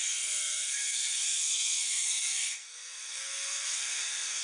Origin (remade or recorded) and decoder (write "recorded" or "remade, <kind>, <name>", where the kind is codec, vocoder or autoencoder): remade, codec, SNAC